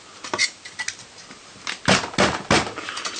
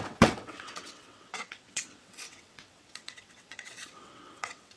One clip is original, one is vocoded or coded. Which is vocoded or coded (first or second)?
second